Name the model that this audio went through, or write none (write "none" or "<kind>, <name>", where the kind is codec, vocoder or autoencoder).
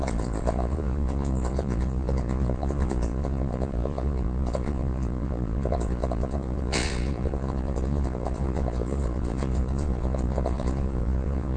vocoder, Vocos